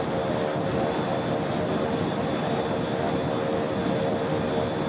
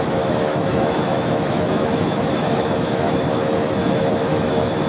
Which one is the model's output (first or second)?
second